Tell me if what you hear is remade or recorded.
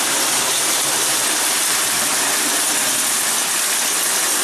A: recorded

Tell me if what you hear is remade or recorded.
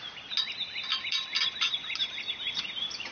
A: recorded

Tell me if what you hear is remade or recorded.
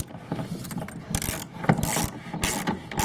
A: recorded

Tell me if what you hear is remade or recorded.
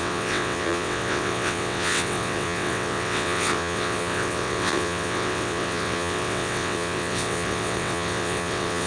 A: remade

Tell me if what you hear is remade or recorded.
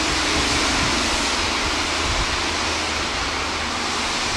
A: recorded